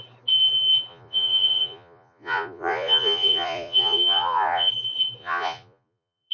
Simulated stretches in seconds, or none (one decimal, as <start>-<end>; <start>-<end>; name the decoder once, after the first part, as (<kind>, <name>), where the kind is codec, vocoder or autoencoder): 0.9-4.7 (vocoder, Vocos); 5.2-6.3